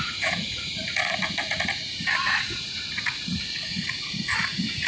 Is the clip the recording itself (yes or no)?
no